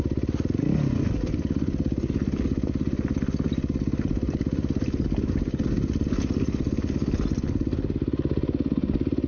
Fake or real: real